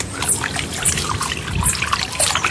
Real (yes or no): yes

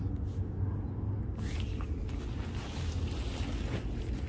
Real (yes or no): yes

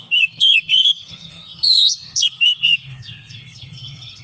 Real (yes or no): no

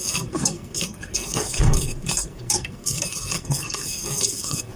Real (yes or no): no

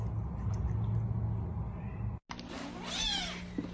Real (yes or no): yes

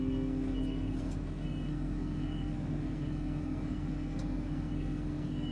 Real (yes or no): no